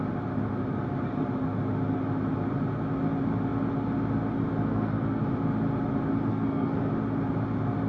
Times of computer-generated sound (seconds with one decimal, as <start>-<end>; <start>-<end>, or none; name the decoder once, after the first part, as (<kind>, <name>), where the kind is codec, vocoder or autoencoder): 4.7-5.2 (codec, SNAC); 6.3-6.9